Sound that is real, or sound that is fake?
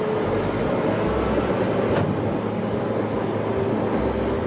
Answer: real